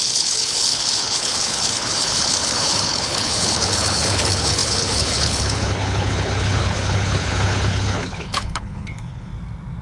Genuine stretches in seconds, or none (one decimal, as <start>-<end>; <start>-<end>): 9.3-9.8